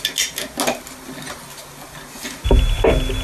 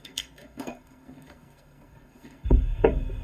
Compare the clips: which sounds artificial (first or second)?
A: second